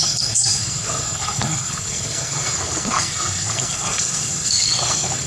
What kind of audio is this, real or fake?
fake